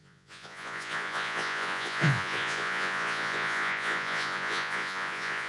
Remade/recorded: remade